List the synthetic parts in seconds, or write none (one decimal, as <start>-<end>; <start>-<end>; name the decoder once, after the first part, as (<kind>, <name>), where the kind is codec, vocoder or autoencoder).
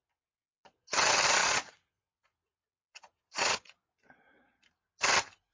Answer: 1.4-4.7 (vocoder, Vocos)